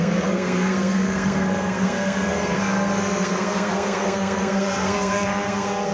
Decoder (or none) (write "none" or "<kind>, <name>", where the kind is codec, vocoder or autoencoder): codec, SNAC